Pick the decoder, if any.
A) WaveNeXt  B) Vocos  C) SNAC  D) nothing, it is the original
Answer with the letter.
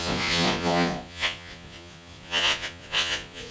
B